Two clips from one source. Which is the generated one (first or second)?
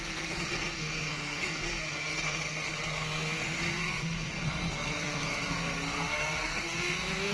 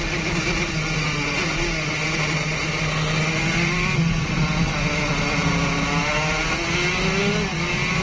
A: first